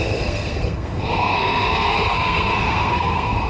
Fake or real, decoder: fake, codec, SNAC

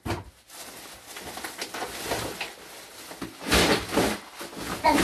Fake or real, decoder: real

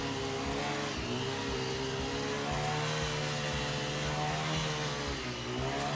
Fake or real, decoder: real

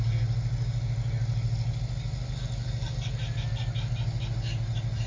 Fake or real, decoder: real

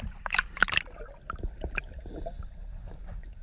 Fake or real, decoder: real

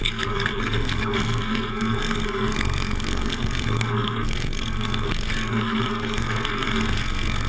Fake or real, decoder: fake, codec, SNAC